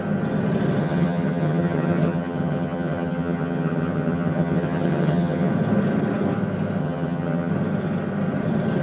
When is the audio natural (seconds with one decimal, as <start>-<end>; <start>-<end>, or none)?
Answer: 0.0-0.8; 5.5-6.8; 7.5-8.8